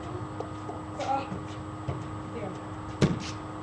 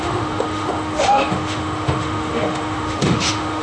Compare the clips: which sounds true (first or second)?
first